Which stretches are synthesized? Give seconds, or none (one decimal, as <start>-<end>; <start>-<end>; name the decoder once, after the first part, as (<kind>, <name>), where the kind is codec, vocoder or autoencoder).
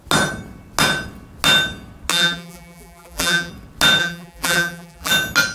2.1-3.5 (vocoder, BigVGAN v2); 4.0-5.1